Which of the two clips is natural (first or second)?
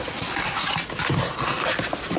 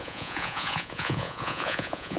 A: first